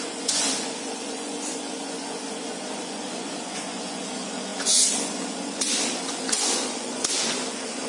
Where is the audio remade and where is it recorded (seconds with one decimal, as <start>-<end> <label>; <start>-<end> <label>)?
0.0-7.9 remade